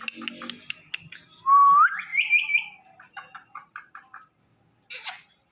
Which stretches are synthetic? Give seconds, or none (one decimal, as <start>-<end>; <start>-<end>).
none